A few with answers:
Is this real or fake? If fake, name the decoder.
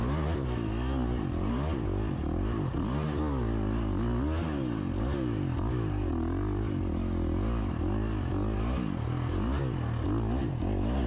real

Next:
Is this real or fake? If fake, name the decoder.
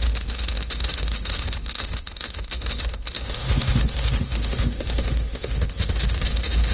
fake, autoencoder, DAC-VAE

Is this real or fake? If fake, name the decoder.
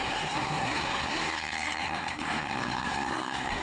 fake, codec, SNAC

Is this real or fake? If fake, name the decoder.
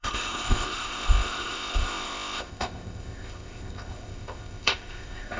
fake, codec, ZipCodec